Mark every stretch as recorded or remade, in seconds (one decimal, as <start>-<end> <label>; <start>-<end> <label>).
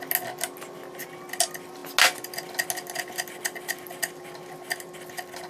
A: 0.0-5.5 recorded